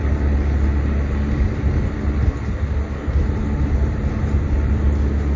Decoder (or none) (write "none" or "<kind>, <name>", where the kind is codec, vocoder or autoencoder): none